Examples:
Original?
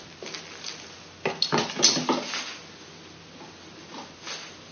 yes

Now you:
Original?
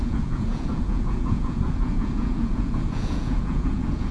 no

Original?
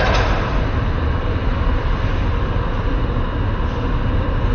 yes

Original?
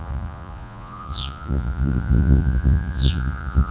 no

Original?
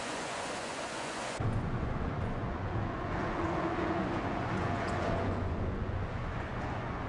no